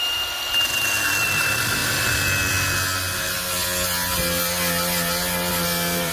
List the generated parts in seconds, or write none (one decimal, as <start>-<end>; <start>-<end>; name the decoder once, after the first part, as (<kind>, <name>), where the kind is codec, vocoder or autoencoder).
0.0-1.8 (vocoder, BigVGAN v2); 5.5-6.1